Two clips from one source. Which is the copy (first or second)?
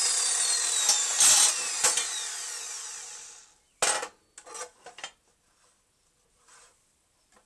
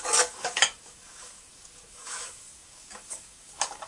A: second